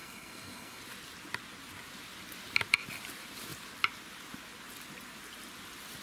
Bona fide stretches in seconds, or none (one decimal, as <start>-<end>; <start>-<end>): 0.8-6.0